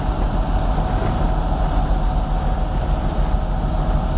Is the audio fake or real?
real